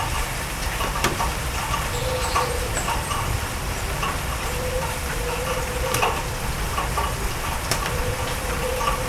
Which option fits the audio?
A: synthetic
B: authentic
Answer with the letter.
A